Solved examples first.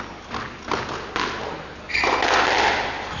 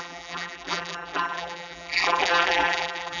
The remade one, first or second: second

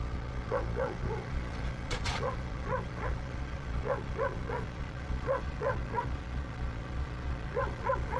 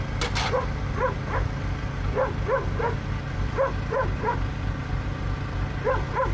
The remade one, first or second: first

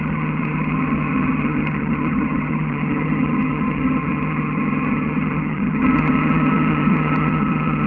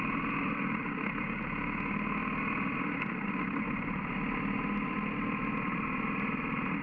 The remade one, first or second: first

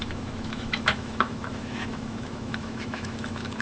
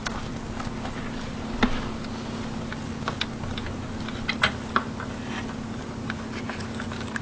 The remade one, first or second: first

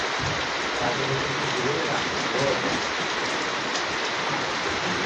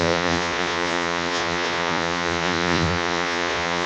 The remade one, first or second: second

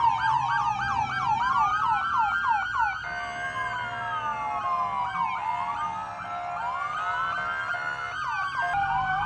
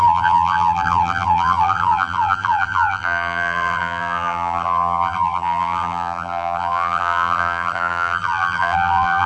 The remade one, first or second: second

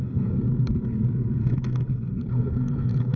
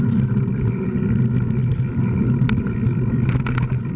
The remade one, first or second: first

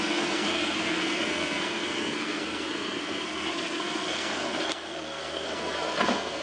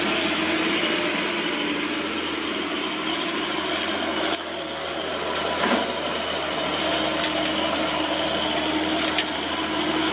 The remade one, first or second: first